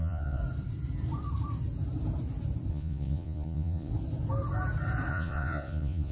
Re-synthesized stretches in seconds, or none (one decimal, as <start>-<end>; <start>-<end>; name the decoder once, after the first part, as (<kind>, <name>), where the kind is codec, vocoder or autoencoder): 0.0-0.4 (vocoder, Vocos); 2.7-3.9; 5.1-6.1